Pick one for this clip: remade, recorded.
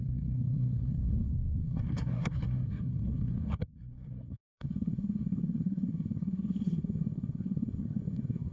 remade